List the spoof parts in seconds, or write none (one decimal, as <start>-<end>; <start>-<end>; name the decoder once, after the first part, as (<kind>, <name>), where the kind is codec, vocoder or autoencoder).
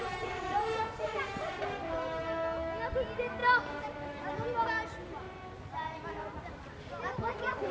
none